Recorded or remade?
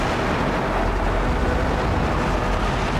recorded